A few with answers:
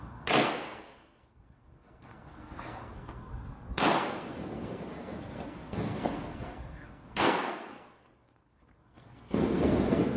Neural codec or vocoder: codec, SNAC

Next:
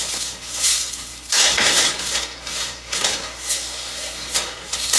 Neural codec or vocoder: codec, SNAC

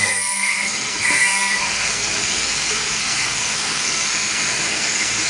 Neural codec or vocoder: codec, SNAC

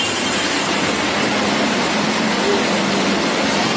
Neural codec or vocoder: none